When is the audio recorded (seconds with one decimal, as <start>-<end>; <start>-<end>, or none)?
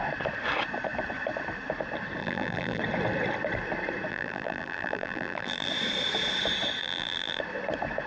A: 0.0-2.2; 2.8-4.1; 5.7-6.8; 7.4-8.1